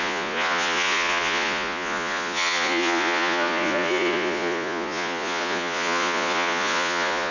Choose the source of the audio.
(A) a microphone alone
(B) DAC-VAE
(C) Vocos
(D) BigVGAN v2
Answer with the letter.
C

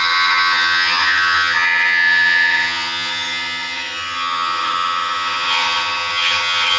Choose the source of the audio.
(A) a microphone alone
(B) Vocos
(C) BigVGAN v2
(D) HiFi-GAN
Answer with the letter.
D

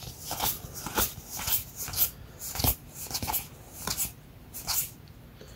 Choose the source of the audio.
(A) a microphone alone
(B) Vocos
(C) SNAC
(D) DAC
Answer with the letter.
A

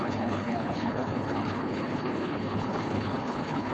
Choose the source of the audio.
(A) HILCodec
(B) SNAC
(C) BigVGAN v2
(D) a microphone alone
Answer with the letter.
A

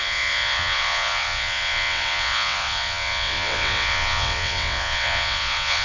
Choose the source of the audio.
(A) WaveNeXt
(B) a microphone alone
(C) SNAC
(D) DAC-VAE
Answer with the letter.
A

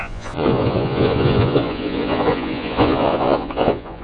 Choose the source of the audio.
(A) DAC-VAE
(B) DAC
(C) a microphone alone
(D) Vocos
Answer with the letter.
D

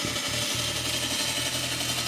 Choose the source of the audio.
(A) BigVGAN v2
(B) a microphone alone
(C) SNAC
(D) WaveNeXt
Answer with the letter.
B